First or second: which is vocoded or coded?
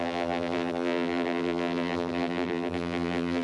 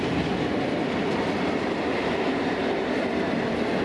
first